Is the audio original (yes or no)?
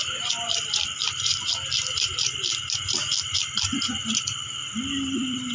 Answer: no